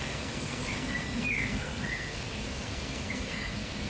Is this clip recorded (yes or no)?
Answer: no